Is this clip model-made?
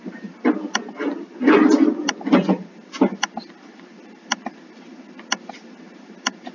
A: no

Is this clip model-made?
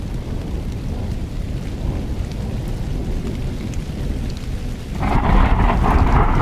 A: no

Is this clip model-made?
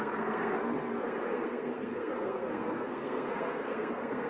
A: yes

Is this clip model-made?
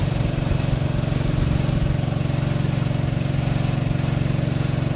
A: no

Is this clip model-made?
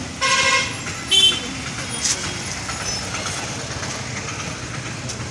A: no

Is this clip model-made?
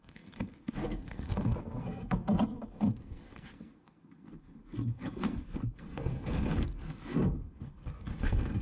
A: yes